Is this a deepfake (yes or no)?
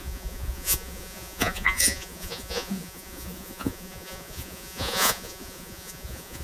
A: yes